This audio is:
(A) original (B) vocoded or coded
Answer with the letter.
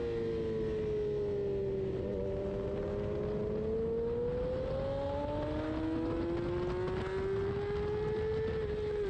A